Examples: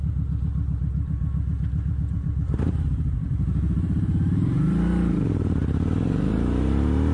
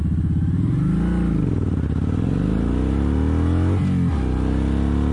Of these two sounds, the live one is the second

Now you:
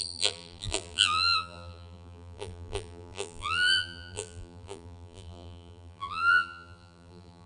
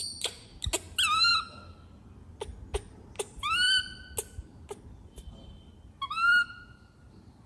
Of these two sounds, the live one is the second